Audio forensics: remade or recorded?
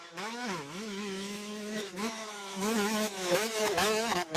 remade